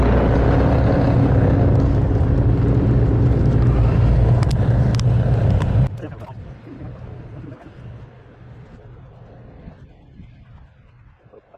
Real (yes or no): yes